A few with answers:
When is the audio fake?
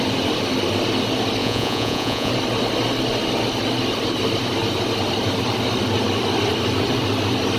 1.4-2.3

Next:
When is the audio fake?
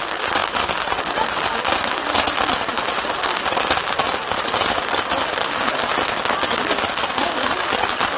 none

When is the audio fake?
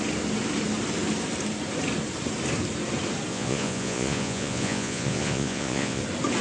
3.3-6.0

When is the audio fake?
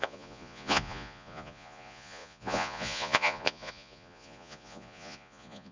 0.0-5.7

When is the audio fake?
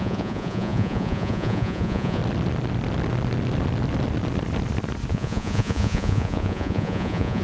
0.0-2.2; 5.1-7.4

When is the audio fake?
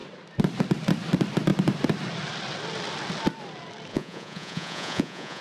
3.9-5.4